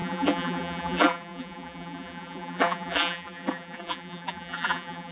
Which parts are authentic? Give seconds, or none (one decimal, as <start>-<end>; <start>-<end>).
none